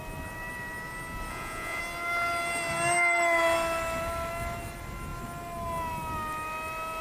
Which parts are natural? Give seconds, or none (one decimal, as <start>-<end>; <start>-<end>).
0.0-1.3; 1.8-7.0